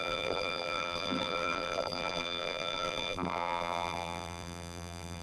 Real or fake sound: fake